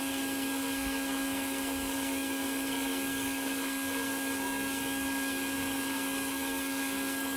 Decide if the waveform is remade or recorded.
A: remade